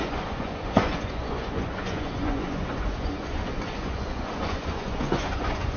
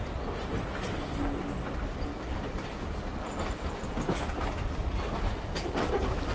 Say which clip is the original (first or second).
second